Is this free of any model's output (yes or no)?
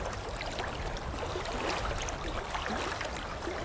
yes